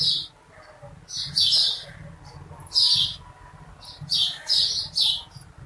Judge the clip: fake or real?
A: real